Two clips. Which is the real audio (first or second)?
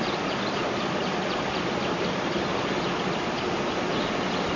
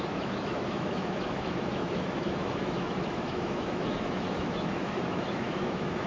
first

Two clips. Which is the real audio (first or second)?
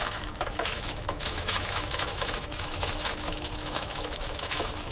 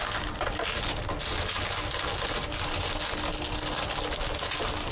second